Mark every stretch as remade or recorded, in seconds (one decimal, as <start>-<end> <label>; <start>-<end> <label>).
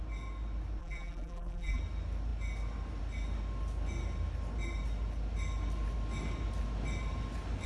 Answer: 0.0-0.8 recorded; 0.8-1.8 remade; 1.8-7.7 recorded